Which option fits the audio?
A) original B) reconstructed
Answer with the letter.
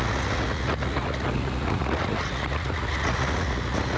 B